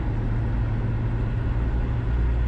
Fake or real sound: real